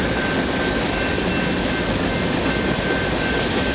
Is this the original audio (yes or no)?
yes